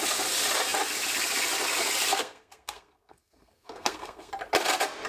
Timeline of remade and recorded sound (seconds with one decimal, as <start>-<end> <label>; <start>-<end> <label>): 0.0-2.1 recorded; 2.1-4.3 remade; 4.3-5.1 recorded